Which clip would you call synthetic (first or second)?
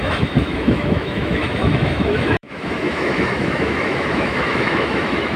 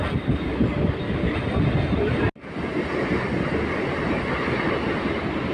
first